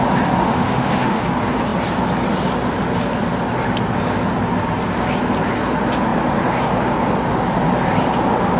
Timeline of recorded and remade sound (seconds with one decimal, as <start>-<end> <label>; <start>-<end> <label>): 0.0-0.4 recorded; 0.4-1.2 remade; 1.2-8.6 recorded